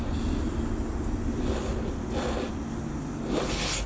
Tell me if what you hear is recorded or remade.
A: recorded